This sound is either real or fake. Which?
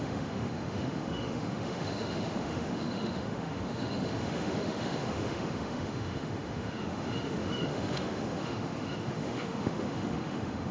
fake